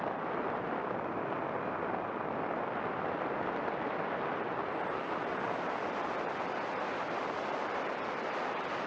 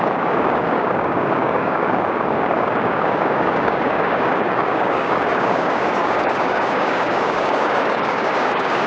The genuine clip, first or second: first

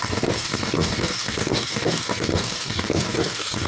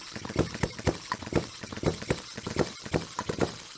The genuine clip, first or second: second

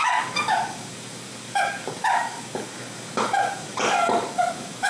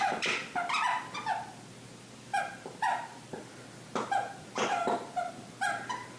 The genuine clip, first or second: second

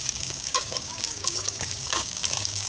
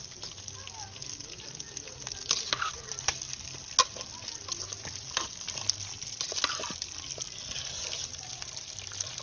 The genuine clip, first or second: second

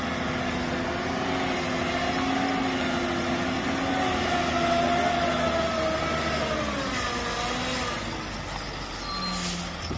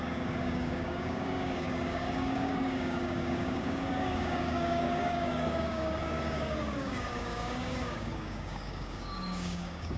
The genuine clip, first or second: first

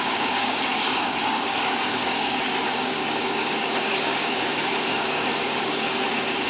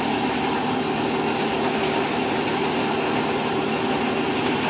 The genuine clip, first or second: second